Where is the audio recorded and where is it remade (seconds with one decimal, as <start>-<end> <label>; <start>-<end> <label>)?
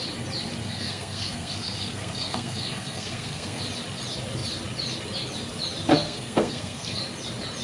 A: 0.0-0.6 recorded; 0.6-3.6 remade; 3.6-5.9 recorded; 5.9-7.0 remade; 7.0-7.6 recorded